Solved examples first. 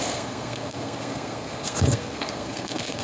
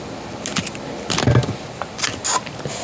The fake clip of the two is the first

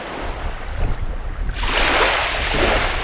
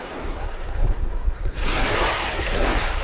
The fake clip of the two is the second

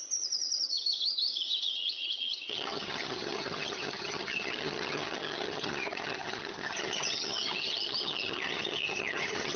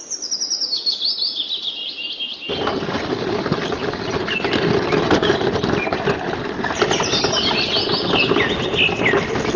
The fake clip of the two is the first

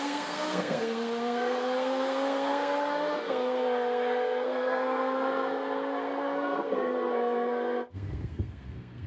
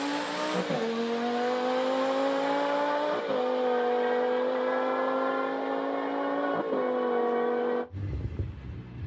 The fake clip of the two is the first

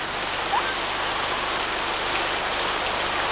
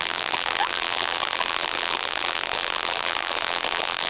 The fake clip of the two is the second